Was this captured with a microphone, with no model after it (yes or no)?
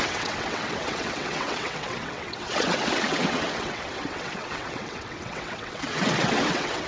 no